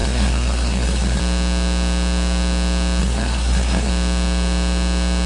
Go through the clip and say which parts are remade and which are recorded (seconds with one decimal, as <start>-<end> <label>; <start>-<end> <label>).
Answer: 0.0-1.2 remade; 1.2-3.0 recorded; 3.0-3.9 remade; 3.9-5.3 recorded